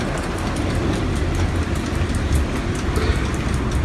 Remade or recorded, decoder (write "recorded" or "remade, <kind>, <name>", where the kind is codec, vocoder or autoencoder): recorded